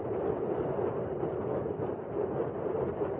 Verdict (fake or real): real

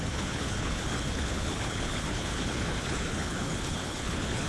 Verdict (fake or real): fake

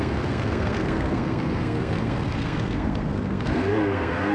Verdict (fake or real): fake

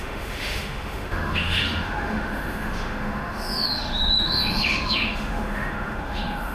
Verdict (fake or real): fake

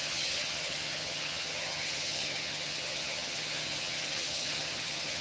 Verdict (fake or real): fake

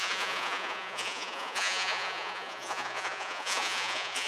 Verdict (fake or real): fake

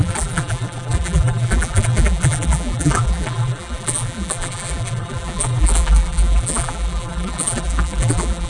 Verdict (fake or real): fake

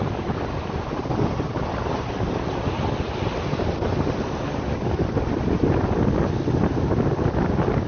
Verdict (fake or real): real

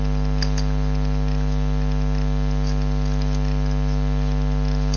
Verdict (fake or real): real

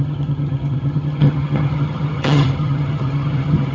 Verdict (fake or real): fake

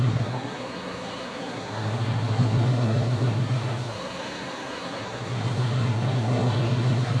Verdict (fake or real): fake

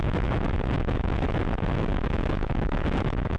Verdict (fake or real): fake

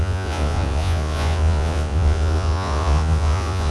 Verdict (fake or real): fake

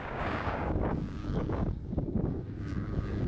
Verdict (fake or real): fake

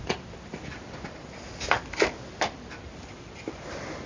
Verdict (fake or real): real